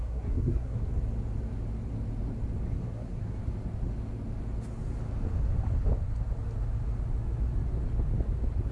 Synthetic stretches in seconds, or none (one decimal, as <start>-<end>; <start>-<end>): 0.0-0.9; 2.8-3.4